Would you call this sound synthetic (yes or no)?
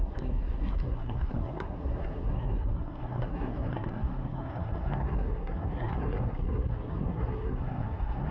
yes